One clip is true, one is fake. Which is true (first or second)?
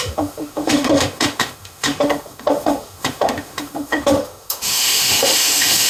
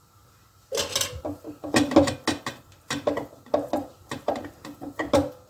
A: second